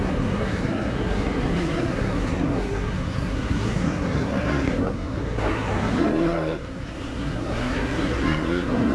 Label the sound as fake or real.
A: fake